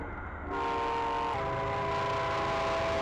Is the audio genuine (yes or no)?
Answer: yes